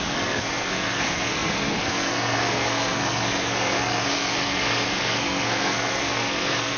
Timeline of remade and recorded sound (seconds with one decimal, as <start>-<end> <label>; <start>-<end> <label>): 0.0-6.8 remade

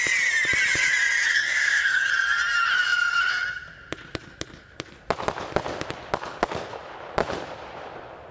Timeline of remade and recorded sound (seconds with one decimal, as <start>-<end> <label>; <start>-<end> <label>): 0.0-1.3 recorded; 1.3-2.1 remade; 2.1-8.3 recorded

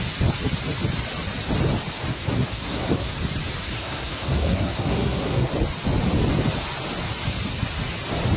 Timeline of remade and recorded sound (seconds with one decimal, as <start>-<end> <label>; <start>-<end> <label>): 0.0-2.1 recorded; 2.1-3.1 remade; 3.1-3.6 recorded; 3.6-5.5 remade; 5.5-8.4 recorded